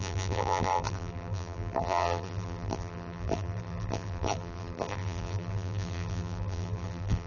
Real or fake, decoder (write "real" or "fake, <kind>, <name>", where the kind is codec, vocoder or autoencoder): fake, vocoder, BigVGAN v2